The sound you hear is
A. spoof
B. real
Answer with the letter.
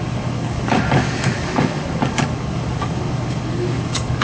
A